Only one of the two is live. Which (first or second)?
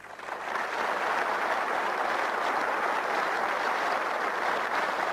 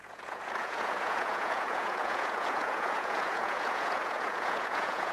first